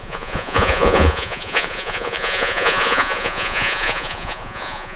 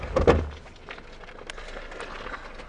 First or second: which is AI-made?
first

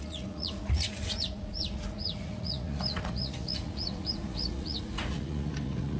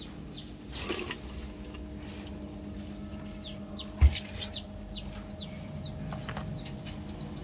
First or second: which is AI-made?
first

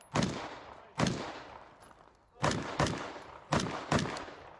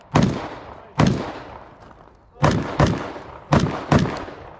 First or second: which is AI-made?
first